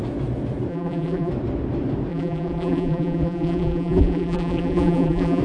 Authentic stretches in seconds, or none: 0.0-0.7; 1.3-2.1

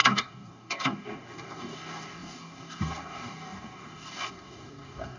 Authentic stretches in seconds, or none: none

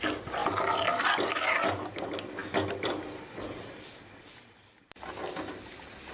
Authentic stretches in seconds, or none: 0.0-6.1